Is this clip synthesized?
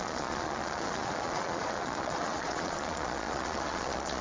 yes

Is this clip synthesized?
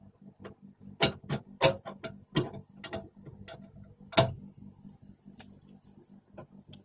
no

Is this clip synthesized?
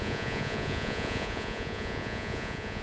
yes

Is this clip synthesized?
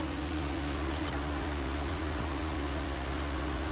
yes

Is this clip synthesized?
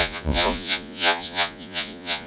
yes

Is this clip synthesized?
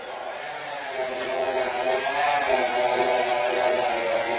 yes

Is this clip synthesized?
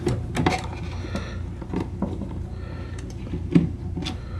no